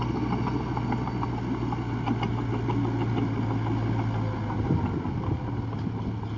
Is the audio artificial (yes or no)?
no